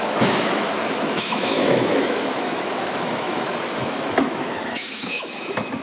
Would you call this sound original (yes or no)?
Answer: no